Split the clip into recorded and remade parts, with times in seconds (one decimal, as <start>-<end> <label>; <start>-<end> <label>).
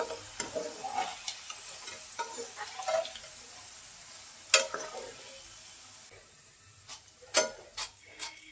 0.0-7.8 recorded; 7.8-8.5 remade